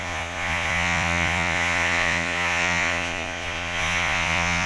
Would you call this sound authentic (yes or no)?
no